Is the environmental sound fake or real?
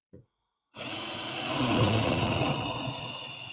fake